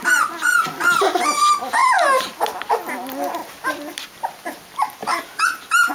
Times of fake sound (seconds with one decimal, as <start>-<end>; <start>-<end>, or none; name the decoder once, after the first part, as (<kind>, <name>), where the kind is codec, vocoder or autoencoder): none